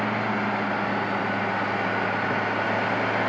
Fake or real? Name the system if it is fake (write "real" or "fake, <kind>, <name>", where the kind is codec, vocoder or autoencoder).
real